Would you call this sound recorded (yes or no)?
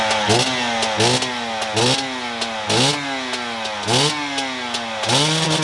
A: yes